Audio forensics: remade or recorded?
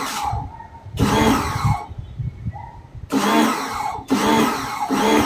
recorded